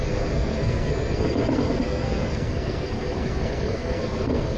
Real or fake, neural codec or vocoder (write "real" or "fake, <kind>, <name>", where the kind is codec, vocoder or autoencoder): fake, codec, SNAC